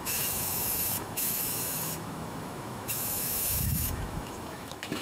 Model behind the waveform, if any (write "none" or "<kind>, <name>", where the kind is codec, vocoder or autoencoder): autoencoder, DAC-VAE